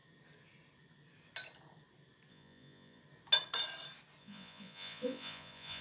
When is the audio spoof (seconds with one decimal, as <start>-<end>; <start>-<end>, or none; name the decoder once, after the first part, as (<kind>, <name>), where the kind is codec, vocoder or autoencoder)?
2.3-3.0 (vocoder, Vocos); 4.2-5.8